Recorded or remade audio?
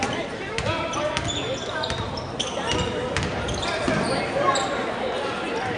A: recorded